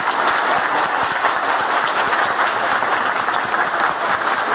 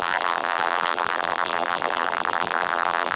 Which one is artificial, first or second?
second